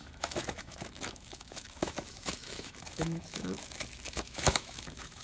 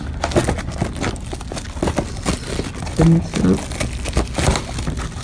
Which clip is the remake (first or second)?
first